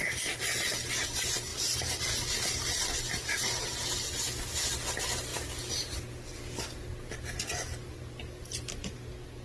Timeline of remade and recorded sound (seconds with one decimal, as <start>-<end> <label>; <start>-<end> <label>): 0.0-9.4 recorded